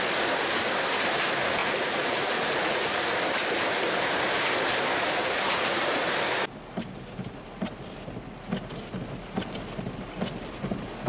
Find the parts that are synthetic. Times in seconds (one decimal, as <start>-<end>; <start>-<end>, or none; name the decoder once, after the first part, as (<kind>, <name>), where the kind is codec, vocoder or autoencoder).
1.6-3.0 (vocoder, Vocos); 5.2-6.0